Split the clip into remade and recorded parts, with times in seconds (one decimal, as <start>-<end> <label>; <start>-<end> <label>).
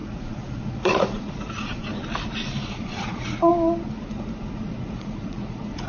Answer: 0.0-1.9 remade; 1.9-2.7 recorded; 2.7-3.5 remade; 3.5-4.1 recorded; 4.1-5.9 remade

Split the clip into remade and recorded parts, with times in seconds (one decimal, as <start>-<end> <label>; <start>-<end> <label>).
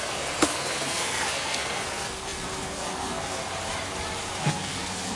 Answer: 0.0-3.4 remade; 3.4-4.4 recorded; 4.4-5.2 remade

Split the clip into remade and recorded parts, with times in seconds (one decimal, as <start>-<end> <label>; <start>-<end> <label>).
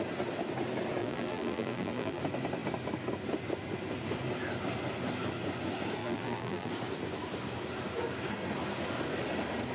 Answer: 0.0-1.0 recorded; 1.0-2.2 remade; 2.2-6.0 recorded; 6.0-6.7 remade; 6.7-9.7 recorded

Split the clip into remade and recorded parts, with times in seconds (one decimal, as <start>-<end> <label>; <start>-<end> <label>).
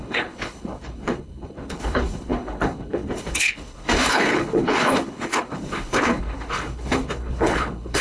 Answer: 0.0-8.0 remade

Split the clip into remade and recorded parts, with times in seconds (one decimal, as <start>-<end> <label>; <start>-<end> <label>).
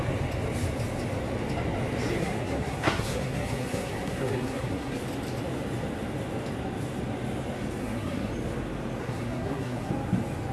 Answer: 0.0-2.2 recorded; 2.2-5.0 remade; 5.0-7.8 recorded; 7.8-8.3 remade; 8.3-9.0 recorded; 9.0-9.9 remade; 9.9-10.5 recorded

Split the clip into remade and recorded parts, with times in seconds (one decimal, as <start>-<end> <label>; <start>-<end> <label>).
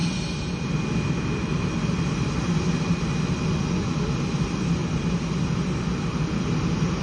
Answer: 0.0-7.0 recorded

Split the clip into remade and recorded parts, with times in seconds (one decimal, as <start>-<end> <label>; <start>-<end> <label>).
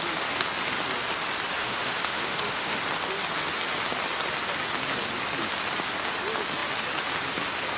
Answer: 0.0-1.6 recorded; 1.6-2.8 remade; 2.8-7.8 recorded